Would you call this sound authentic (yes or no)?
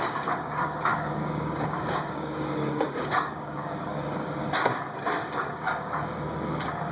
no